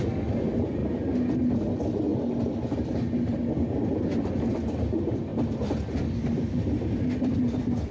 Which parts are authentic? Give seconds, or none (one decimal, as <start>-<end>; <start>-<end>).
0.8-1.7; 2.1-4.3